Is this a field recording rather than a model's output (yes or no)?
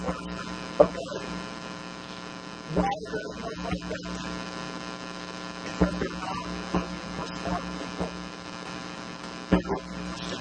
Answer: yes